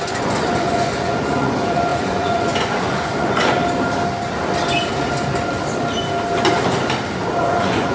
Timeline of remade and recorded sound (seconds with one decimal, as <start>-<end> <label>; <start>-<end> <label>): 0.0-3.6 remade; 3.6-7.4 recorded; 7.4-7.9 remade